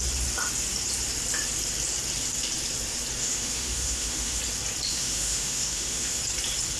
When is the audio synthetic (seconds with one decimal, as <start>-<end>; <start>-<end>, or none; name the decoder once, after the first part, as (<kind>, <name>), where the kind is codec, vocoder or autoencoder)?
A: 3.2-4.4 (autoencoder, DAC-VAE); 4.9-6.2